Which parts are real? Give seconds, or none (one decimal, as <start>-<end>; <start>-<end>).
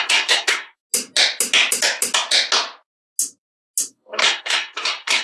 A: 0.8-3.9